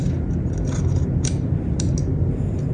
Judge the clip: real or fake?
real